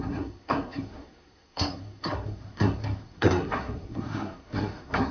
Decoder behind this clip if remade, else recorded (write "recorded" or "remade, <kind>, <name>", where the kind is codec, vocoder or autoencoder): remade, codec, SNAC